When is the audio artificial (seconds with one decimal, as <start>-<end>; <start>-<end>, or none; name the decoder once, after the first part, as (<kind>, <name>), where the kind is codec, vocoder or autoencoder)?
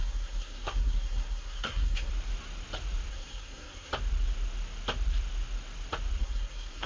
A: 0.0-2.1 (codec, SNAC); 3.1-3.9; 6.2-6.9